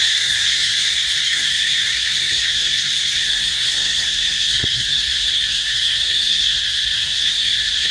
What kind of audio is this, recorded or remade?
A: remade